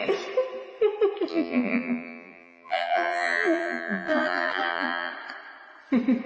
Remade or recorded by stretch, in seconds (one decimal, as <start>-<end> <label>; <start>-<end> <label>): 0.0-1.3 recorded; 1.3-5.1 remade; 5.1-6.3 recorded